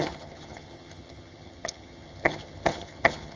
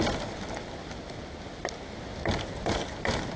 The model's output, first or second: first